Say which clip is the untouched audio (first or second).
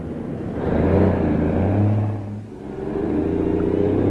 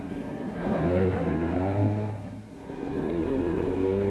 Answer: first